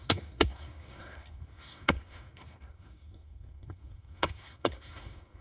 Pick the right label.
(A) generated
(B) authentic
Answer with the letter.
A